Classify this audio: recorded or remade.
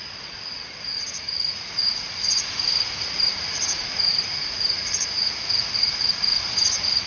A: remade